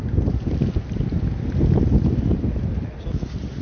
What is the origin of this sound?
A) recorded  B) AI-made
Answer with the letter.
A